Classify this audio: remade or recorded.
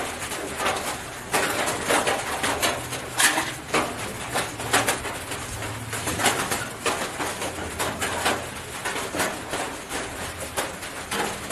recorded